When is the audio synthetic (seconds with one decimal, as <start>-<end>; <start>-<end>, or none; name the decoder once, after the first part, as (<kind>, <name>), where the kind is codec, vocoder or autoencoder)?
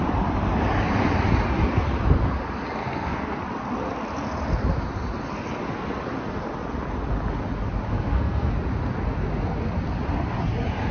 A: 2.8-3.4 (codec, SNAC); 7.9-8.5